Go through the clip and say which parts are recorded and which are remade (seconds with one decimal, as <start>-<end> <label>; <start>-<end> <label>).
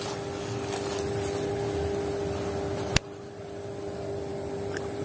0.0-5.0 recorded